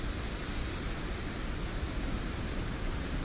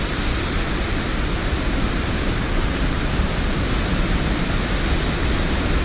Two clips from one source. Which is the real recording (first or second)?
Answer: second